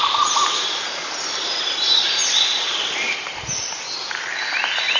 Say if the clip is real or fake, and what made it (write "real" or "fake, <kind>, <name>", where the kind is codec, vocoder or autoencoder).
real